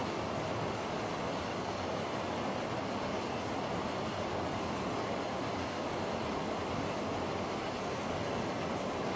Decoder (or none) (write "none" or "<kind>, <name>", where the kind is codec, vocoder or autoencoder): none